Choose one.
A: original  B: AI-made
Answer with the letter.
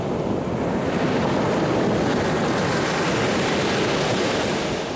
A